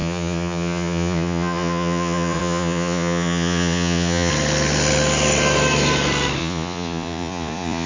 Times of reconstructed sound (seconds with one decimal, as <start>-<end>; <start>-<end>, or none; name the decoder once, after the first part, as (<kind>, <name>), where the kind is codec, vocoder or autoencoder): 0.0-4.3 (vocoder, Vocos); 6.4-7.9